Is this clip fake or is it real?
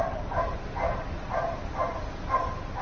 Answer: real